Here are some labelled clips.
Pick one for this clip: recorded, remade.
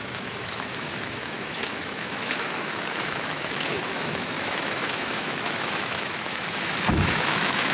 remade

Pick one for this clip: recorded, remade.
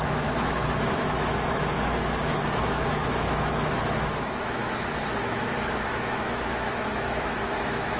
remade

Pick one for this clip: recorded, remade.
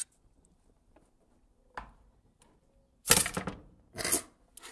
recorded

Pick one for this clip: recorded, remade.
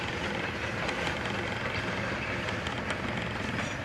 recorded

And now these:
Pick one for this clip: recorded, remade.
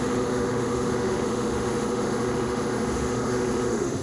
remade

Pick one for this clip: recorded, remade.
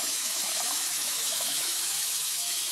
remade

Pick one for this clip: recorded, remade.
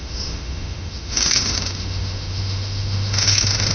remade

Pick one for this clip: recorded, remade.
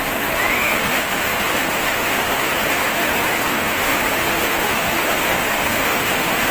remade